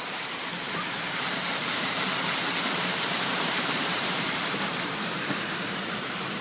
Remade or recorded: remade